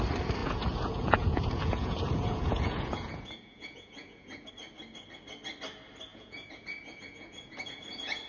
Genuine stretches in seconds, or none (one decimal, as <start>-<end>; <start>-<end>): 0.0-0.4; 4.5-6.1